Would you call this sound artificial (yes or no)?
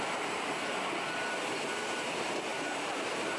no